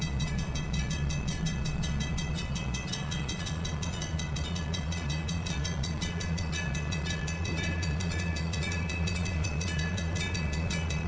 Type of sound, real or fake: fake